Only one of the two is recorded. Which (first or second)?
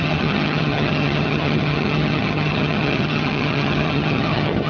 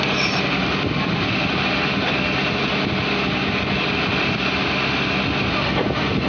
second